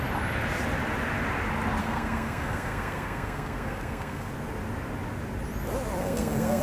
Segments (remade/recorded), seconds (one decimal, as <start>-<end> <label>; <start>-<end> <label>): 0.0-1.8 recorded; 1.8-4.3 remade; 4.3-6.0 recorded; 6.0-6.6 remade

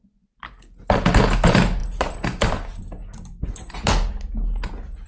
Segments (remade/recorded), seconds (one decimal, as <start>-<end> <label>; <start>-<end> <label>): 0.0-5.1 recorded

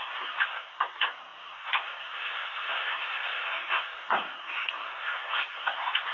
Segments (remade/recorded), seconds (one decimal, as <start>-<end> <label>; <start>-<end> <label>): 0.0-6.1 remade

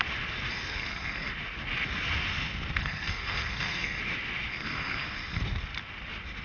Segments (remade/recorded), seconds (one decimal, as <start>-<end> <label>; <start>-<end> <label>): 0.0-0.5 recorded; 0.5-1.3 remade; 1.3-2.8 recorded; 2.8-4.0 remade; 4.0-4.5 recorded; 4.5-5.4 remade; 5.4-6.4 recorded

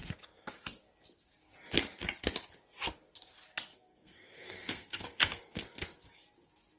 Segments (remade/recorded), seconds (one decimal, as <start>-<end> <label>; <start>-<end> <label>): 0.0-3.7 recorded; 3.7-5.6 remade; 5.6-6.8 recorded

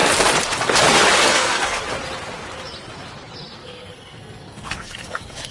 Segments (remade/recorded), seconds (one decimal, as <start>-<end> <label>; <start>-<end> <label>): 0.0-1.3 recorded; 1.3-1.8 remade; 1.8-3.6 recorded; 3.6-5.5 remade

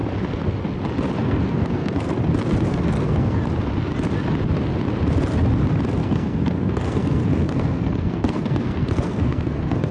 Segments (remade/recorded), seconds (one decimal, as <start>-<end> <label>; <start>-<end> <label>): 0.0-1.2 recorded; 1.2-2.1 remade; 2.1-2.7 recorded; 2.7-3.4 remade; 3.4-6.0 recorded; 6.0-9.9 remade

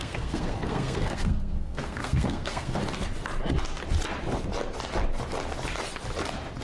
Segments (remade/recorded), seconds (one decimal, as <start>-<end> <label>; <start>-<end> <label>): 0.0-2.8 remade; 2.8-6.6 recorded